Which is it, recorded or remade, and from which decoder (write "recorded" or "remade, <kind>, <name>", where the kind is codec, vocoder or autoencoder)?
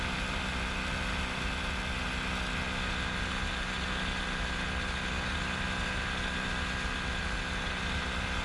recorded